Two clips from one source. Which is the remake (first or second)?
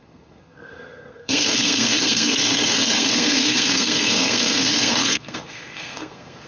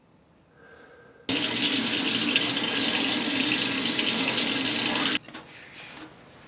first